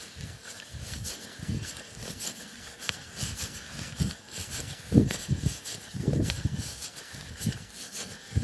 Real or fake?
fake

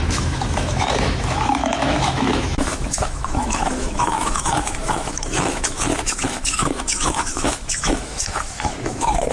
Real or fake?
fake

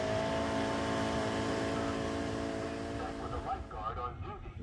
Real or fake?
real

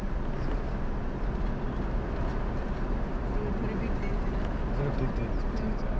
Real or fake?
real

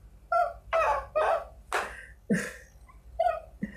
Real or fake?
real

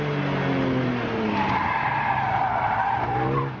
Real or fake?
real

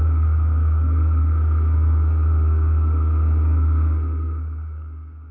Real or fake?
fake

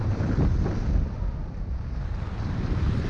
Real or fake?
real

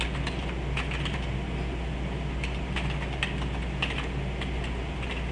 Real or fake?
real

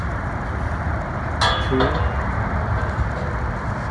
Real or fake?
real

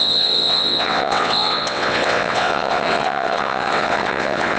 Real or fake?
fake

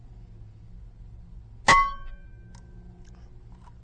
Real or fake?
real